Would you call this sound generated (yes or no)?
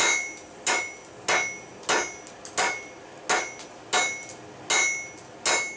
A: no